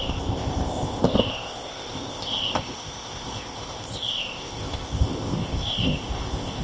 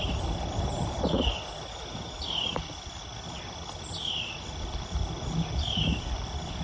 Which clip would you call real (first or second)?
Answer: second